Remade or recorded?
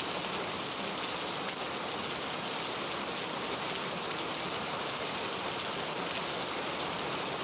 recorded